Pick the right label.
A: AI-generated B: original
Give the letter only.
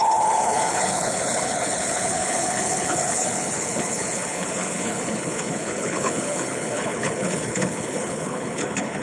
A